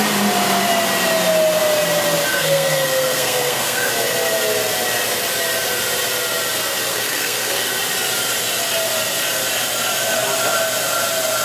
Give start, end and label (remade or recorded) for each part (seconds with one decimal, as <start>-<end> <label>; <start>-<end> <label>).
0.0-2.3 recorded; 2.3-3.9 remade; 3.9-6.9 recorded; 6.9-7.7 remade; 7.7-11.4 recorded